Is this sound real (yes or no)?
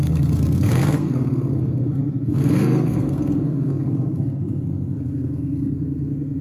no